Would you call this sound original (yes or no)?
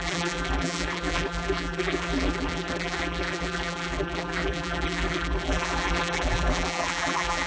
no